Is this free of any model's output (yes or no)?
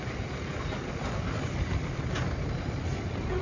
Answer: no